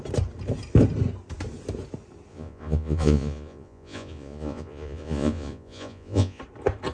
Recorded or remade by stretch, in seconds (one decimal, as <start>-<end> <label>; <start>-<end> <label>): 0.0-2.3 recorded; 2.3-6.4 remade; 6.4-6.9 recorded